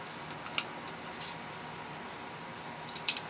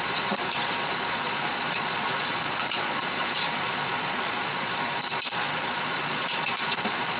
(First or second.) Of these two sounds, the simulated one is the second